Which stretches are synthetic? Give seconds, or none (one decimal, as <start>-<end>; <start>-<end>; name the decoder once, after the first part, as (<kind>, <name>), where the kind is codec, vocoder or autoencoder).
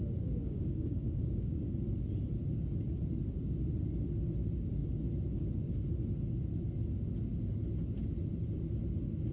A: 0.4-1.6 (codec, DAC)